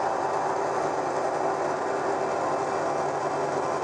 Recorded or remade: recorded